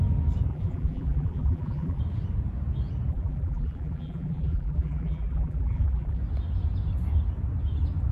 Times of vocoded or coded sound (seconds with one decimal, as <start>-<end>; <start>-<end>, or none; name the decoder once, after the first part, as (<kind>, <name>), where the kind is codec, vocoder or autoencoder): 0.5-2.0 (vocoder, BigVGAN v2); 3.1-6.2